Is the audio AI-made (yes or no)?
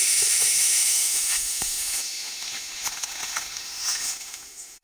yes